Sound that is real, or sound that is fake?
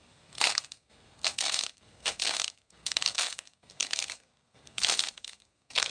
fake